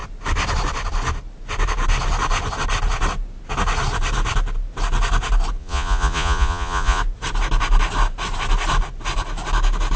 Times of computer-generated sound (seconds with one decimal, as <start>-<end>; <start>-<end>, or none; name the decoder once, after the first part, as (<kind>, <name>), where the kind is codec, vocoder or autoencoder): 5.6-7.0 (vocoder, Vocos)